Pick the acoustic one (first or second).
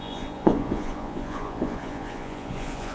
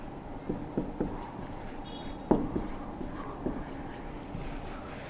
second